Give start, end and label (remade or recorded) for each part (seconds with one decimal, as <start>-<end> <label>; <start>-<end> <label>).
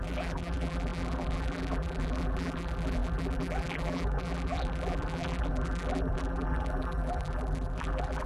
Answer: 0.0-8.3 remade